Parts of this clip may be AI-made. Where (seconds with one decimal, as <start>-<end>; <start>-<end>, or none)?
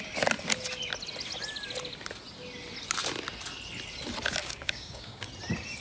4.4-5.3